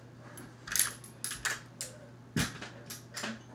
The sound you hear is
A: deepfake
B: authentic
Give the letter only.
B